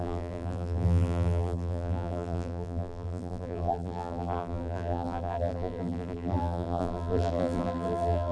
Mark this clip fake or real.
fake